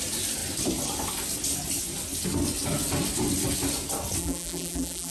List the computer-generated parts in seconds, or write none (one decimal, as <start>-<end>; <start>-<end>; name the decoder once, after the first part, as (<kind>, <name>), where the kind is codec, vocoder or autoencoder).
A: 4.2-5.1 (vocoder, BigVGAN v2)